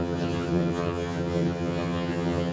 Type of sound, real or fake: fake